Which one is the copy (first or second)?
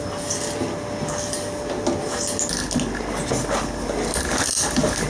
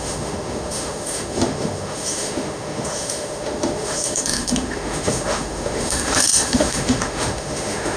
second